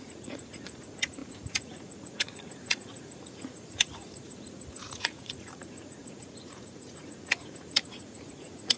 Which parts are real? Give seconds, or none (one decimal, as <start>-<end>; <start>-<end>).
none